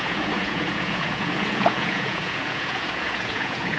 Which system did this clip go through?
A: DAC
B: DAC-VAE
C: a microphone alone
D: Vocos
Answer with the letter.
D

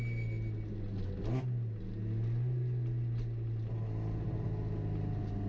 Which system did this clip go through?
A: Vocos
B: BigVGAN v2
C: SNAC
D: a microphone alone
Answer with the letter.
D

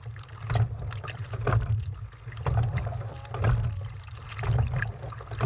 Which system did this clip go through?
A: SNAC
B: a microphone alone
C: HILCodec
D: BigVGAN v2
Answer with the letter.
B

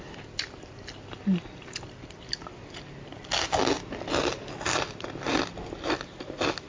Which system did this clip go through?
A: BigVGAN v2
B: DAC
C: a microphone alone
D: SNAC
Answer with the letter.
C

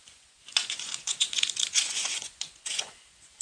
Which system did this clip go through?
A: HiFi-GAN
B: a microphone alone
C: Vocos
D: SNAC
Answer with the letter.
C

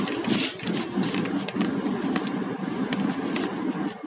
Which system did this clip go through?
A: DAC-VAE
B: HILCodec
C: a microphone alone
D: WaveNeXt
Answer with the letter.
C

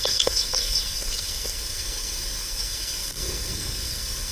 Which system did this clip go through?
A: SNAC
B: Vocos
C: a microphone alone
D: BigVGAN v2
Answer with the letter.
A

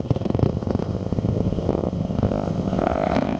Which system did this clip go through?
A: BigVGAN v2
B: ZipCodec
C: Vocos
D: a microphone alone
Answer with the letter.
B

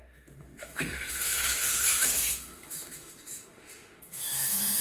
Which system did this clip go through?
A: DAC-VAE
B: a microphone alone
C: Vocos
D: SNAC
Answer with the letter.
A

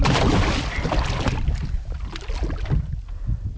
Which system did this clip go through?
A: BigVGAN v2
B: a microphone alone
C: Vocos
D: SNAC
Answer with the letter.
B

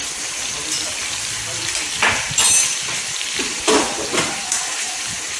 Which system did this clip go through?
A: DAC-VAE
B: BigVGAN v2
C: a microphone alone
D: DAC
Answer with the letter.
B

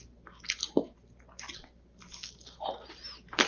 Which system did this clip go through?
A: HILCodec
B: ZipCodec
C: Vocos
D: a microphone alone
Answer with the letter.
D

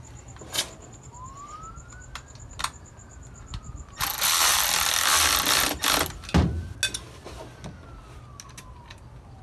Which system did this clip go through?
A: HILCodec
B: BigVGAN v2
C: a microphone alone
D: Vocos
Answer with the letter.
C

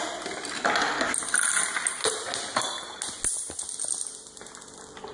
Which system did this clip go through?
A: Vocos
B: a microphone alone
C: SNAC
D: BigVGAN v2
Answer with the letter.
B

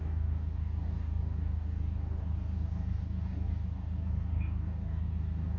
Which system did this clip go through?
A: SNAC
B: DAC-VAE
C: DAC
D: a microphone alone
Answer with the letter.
C